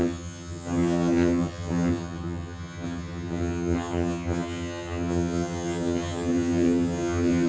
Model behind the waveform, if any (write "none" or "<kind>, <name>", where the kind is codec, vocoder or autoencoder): vocoder, HiFi-GAN